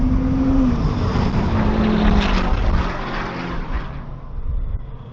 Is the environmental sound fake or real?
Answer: real